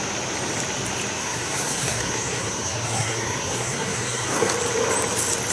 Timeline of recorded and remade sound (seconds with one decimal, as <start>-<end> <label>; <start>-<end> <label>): 0.0-1.2 recorded; 1.2-4.5 remade; 4.5-5.5 recorded